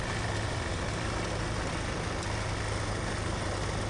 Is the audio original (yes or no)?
yes